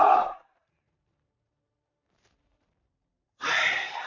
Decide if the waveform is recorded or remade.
remade